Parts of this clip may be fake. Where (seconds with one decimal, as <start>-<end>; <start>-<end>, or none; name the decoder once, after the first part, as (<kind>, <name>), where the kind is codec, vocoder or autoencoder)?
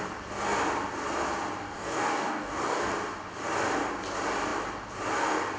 1.6-2.9 (codec, DAC)